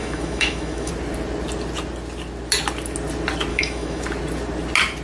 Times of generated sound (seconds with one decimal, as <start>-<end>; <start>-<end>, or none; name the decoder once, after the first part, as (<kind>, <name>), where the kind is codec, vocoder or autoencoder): 0.0-0.9 (autoencoder, DAC-VAE); 3.5-4.0

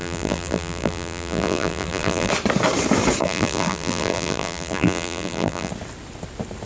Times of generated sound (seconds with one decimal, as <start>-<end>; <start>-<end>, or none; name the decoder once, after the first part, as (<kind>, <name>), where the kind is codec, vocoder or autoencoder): 0.0-2.3 (vocoder, BigVGAN v2); 3.2-5.7

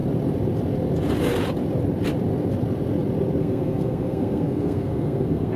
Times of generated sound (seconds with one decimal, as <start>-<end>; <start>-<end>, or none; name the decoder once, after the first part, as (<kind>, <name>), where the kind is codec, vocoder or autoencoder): 3.4-5.6 (codec, SNAC)

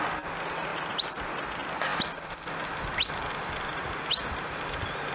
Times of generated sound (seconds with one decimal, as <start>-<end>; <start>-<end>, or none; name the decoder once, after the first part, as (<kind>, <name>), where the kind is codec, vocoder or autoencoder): none

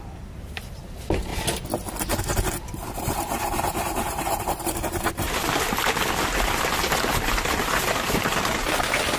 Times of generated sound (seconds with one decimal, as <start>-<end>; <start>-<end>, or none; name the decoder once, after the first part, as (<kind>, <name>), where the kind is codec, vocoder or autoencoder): 0.0-1.3 (vocoder, BigVGAN v2); 2.2-5.7

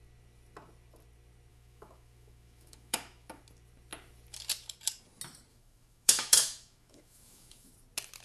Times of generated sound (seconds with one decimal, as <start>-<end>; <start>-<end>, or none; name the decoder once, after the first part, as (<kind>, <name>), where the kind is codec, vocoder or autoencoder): 1.5-3.4 (autoencoder, DAC-VAE); 5.5-7.7

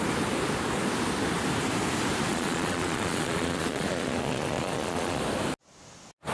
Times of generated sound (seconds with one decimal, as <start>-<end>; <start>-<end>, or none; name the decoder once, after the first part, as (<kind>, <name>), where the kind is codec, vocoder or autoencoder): 2.3-5.2 (vocoder, Vocos)

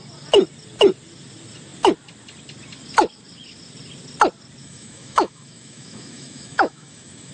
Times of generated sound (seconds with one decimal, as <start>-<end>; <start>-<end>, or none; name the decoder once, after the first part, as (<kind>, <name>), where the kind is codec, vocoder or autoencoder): 4.6-7.3 (autoencoder, DAC-VAE)